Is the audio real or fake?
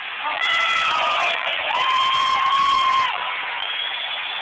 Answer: fake